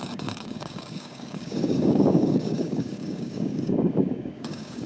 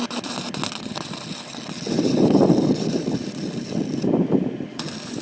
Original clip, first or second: second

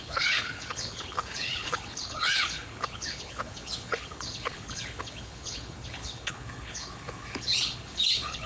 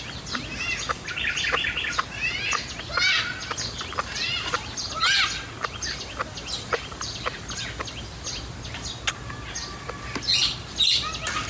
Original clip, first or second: second